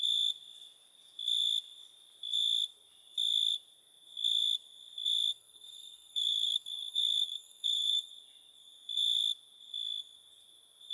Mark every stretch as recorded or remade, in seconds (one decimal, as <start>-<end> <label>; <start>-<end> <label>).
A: 0.0-5.3 recorded; 5.3-8.1 remade; 8.1-10.9 recorded